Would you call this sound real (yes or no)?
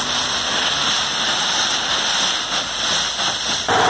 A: yes